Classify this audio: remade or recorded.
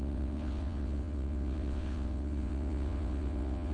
remade